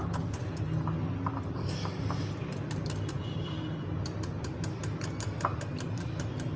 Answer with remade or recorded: recorded